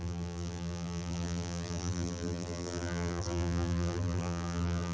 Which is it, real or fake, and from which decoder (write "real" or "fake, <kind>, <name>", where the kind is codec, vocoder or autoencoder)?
fake, vocoder, BigVGAN v2